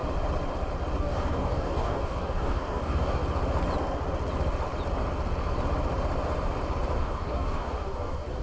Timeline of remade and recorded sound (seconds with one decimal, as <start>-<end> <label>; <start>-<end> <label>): 0.0-1.0 recorded; 1.0-3.2 remade; 3.2-7.0 recorded; 7.0-8.4 remade